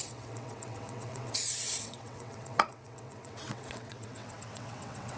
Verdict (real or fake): fake